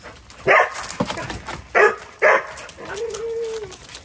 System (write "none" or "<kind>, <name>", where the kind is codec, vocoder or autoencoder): none